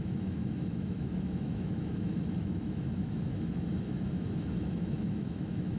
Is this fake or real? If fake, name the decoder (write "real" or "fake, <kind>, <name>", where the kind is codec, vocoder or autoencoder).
fake, autoencoder, DAC-VAE